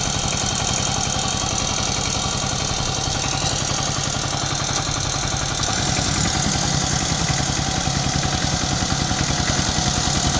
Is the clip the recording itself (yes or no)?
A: yes